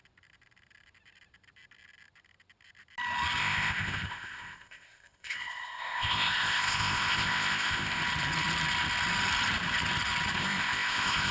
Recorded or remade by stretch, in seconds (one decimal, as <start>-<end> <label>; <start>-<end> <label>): 0.0-3.4 recorded; 3.4-8.0 remade; 8.0-10.4 recorded; 10.4-11.3 remade